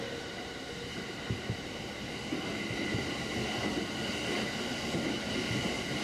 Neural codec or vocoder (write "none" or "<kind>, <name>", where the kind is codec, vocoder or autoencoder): none